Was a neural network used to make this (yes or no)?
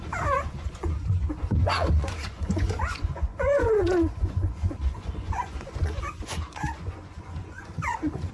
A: yes